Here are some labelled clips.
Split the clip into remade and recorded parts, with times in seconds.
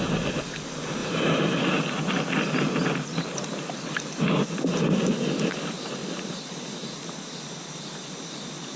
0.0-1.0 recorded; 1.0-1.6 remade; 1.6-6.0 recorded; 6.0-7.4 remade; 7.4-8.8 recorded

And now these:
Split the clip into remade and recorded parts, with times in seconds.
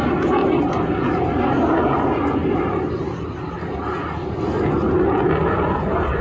0.0-0.4 recorded; 0.4-1.0 remade; 1.0-6.2 recorded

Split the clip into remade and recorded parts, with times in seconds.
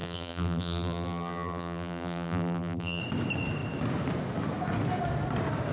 0.0-3.0 remade; 3.0-5.7 recorded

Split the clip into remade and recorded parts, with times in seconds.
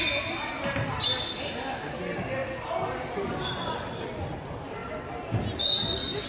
0.0-6.3 recorded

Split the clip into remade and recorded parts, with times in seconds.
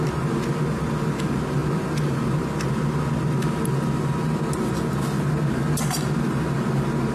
0.0-7.1 recorded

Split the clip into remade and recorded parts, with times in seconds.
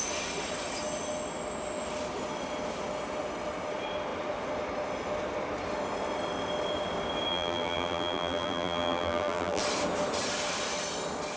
0.0-7.3 recorded; 7.3-9.6 remade; 9.6-11.4 recorded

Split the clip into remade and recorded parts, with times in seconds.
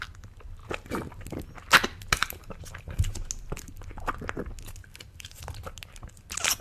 0.0-2.2 recorded; 2.2-3.2 remade; 3.2-4.8 recorded; 4.8-5.4 remade; 5.4-6.6 recorded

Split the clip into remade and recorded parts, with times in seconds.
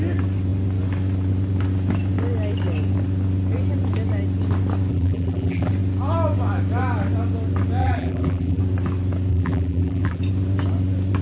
0.0-4.9 recorded; 4.9-5.7 remade; 5.7-7.8 recorded; 7.8-8.6 remade; 8.6-9.3 recorded; 9.3-10.2 remade; 10.2-11.2 recorded